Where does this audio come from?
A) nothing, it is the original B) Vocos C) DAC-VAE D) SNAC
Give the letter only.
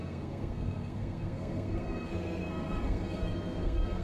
D